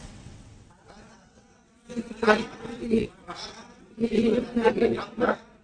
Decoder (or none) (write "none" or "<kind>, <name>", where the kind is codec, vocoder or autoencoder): vocoder, WaveNeXt